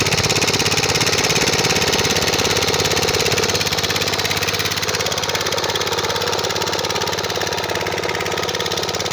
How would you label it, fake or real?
real